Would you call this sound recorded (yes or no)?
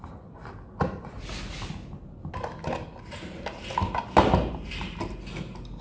yes